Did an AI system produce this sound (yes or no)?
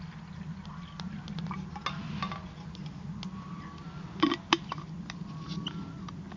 no